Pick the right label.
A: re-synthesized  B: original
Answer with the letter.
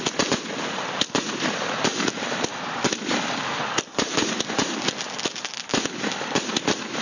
B